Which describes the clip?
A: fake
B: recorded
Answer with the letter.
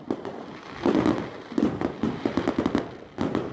B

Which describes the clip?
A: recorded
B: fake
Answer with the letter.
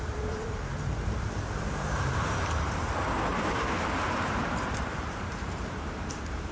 B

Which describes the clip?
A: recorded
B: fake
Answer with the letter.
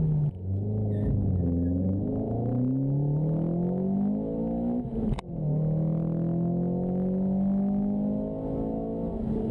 A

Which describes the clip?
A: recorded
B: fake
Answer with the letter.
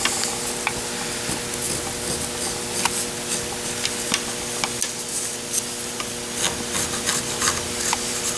A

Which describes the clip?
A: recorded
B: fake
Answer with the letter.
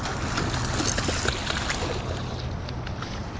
A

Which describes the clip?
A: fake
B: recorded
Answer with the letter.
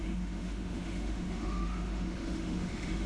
A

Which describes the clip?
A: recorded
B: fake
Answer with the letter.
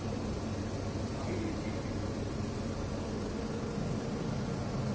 A